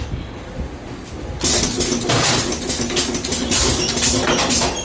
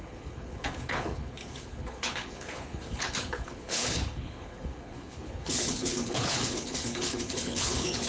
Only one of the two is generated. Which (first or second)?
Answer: second